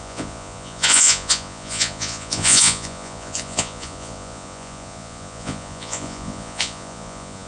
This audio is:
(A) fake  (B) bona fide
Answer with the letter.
A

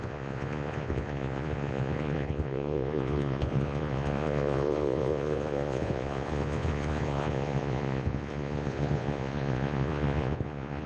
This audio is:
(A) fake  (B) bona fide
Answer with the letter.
A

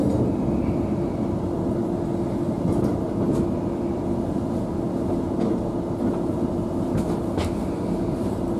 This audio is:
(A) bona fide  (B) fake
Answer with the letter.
A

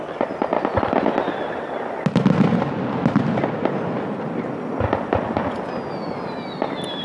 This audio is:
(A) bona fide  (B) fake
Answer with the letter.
A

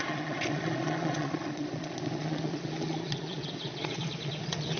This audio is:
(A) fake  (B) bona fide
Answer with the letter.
A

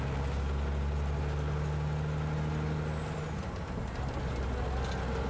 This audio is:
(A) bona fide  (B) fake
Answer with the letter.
A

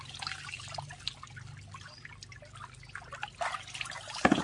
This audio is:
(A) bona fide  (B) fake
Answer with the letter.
A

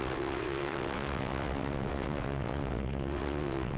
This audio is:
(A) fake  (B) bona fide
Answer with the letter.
A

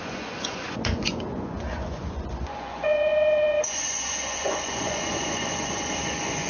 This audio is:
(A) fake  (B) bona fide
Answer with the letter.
A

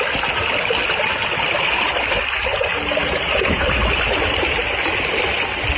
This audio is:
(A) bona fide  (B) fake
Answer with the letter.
A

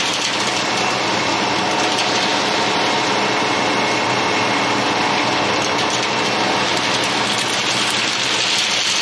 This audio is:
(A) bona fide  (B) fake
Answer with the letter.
A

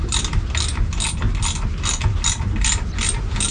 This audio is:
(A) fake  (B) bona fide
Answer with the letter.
B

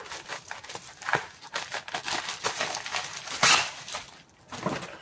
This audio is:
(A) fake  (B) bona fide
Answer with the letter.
B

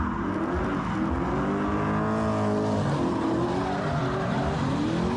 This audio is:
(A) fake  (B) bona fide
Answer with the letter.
B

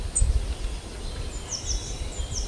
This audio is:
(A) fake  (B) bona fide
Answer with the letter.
B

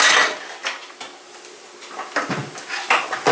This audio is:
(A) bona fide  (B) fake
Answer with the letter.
A